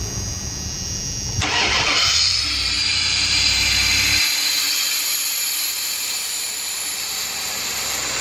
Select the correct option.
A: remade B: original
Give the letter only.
A